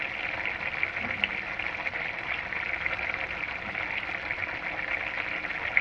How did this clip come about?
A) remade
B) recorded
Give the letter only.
B